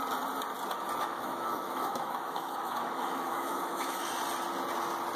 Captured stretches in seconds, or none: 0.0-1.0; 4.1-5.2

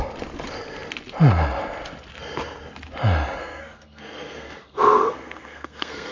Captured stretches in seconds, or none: 0.0-3.4

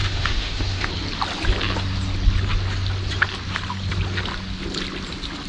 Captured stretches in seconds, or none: 0.9-5.5